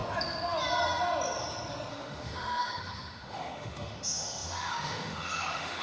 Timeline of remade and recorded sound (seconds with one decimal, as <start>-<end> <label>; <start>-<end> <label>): 0.0-1.9 recorded; 1.9-5.8 remade